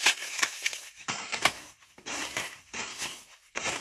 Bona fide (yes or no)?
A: no